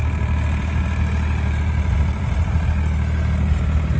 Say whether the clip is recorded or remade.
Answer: recorded